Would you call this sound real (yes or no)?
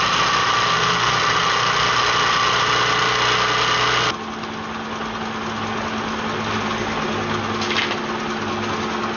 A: yes